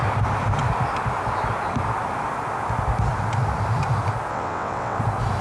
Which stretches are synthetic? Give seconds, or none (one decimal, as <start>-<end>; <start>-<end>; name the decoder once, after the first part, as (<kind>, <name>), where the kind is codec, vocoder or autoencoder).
4.3-5.0 (vocoder, WaveNeXt)